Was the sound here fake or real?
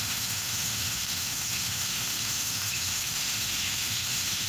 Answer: fake